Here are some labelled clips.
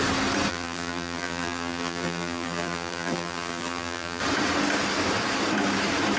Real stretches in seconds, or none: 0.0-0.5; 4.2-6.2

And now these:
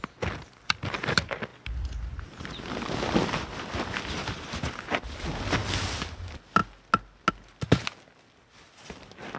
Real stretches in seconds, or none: 0.0-9.4

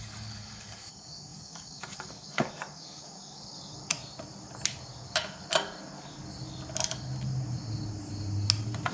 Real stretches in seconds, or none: 3.9-8.9

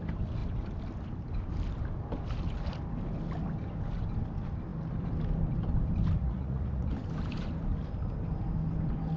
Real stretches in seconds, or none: 0.0-6.2; 6.9-9.2